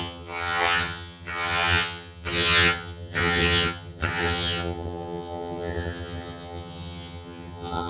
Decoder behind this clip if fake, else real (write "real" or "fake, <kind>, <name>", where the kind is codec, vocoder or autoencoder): fake, vocoder, HiFi-GAN